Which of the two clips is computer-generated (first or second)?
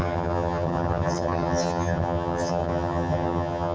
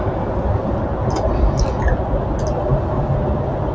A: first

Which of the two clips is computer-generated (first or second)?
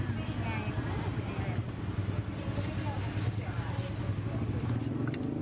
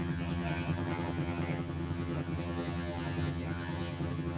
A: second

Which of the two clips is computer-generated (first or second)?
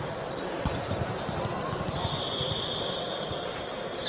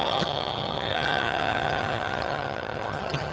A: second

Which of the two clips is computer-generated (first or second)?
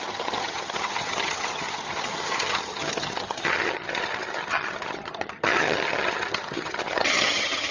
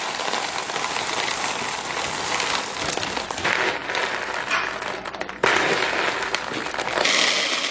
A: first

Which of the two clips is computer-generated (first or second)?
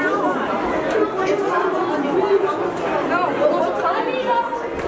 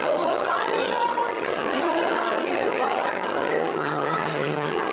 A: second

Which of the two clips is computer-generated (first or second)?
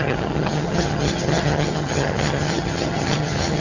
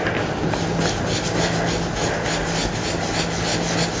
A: first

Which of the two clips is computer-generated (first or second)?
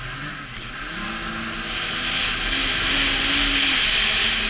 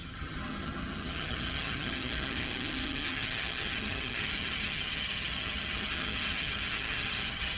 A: second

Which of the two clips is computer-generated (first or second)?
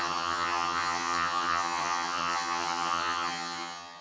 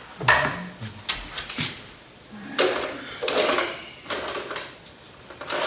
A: first